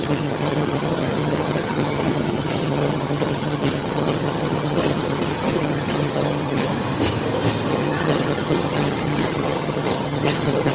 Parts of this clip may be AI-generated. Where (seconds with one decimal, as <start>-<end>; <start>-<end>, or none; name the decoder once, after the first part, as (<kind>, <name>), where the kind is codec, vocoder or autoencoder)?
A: 0.0-6.7 (vocoder, HiFi-GAN); 7.7-10.7